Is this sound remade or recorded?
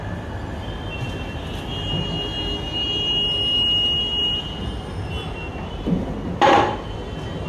recorded